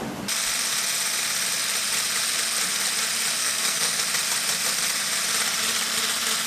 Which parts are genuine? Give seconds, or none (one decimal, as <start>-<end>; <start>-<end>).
0.0-3.4; 4.0-6.5